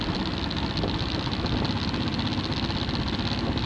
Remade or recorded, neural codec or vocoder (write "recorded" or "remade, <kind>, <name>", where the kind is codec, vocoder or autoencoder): recorded